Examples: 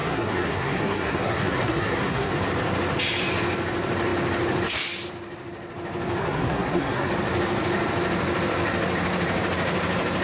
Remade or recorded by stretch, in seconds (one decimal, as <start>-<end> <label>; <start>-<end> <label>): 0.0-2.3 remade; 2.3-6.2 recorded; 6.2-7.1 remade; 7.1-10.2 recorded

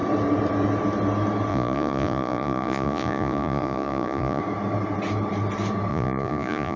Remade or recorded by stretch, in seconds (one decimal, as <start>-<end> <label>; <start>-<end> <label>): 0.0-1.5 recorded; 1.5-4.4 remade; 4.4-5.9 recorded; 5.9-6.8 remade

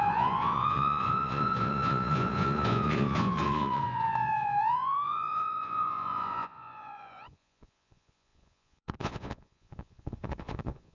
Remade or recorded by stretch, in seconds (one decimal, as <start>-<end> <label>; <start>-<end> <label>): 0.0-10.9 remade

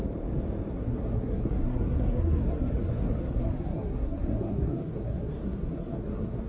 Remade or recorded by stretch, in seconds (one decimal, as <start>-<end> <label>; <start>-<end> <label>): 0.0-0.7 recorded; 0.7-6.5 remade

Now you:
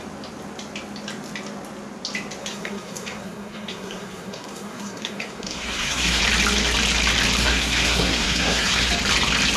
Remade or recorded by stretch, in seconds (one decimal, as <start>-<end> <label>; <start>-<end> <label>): 0.0-2.4 recorded; 2.4-6.2 remade; 6.2-7.4 recorded; 7.4-8.9 remade; 8.9-9.6 recorded